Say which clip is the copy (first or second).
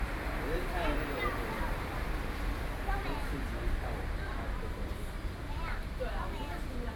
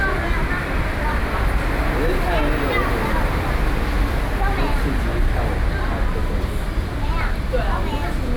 first